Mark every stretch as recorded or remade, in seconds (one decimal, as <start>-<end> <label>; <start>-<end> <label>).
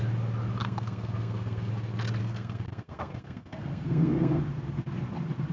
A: 0.0-0.6 recorded; 0.6-1.7 remade; 1.7-2.2 recorded; 2.2-4.4 remade; 4.4-5.5 recorded